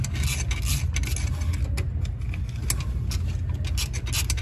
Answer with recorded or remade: recorded